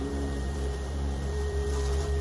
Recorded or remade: remade